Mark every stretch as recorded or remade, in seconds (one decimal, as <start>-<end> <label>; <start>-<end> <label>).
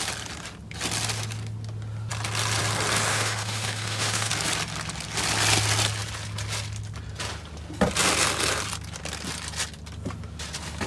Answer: 0.0-3.1 recorded; 3.1-4.3 remade; 4.3-10.9 recorded